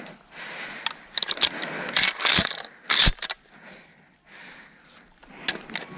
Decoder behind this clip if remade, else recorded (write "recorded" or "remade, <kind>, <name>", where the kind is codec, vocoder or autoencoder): recorded